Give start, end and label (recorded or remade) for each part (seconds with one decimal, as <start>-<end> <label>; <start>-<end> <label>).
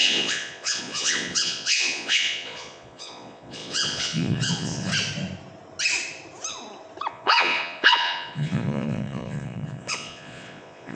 0.0-4.9 remade; 4.9-7.1 recorded; 7.1-11.0 remade